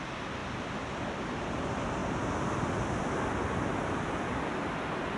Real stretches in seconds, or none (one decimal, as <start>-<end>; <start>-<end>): 0.0-5.2